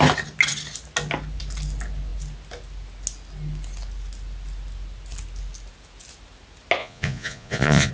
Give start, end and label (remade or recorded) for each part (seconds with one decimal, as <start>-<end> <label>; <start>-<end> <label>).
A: 0.0-6.8 recorded; 6.8-7.9 remade